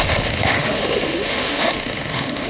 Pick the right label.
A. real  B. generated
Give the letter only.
B